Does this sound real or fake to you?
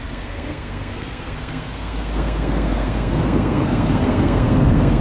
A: fake